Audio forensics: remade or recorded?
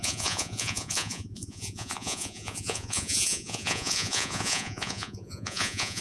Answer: remade